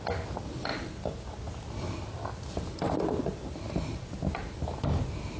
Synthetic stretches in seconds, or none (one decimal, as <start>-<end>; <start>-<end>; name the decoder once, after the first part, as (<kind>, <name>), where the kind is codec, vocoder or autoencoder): none